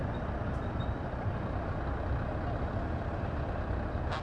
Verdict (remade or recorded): recorded